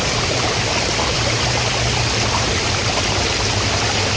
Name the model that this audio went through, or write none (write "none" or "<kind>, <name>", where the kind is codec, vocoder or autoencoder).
none